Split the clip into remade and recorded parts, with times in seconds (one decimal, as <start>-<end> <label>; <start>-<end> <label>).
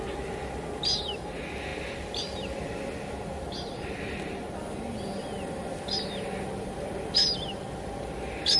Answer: 0.0-8.6 recorded